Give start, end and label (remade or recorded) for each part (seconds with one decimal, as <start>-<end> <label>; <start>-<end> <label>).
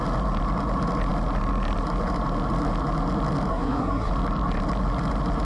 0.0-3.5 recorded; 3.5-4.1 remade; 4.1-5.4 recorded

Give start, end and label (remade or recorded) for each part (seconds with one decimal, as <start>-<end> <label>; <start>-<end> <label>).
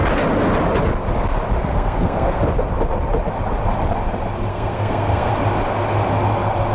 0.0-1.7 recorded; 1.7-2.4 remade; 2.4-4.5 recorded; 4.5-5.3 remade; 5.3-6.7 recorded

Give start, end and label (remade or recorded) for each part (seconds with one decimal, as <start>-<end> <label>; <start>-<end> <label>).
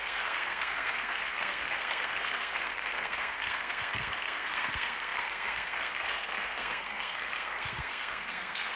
0.0-8.8 remade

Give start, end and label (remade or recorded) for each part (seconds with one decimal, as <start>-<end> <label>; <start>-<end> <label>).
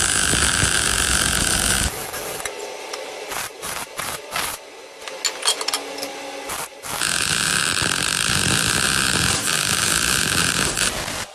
0.0-11.3 recorded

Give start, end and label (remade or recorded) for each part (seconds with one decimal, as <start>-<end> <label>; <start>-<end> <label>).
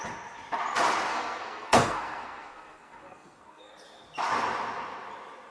0.0-1.1 recorded; 1.1-3.7 remade; 3.7-5.5 recorded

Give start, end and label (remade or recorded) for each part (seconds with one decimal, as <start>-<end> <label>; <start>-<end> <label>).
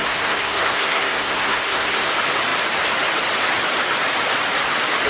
0.0-2.1 remade; 2.1-5.1 recorded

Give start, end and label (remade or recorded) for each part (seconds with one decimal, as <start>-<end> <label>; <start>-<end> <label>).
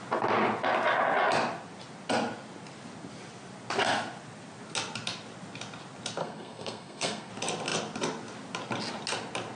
0.0-6.2 recorded; 6.2-7.3 remade; 7.3-9.5 recorded